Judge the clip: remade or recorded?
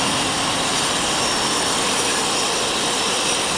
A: recorded